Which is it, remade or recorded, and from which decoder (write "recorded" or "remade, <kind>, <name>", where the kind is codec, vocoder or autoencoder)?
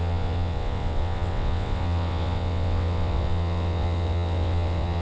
remade, vocoder, WaveNeXt